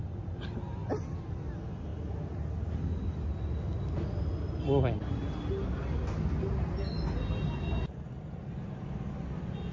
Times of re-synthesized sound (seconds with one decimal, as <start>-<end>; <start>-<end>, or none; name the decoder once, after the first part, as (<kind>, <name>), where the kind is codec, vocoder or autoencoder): none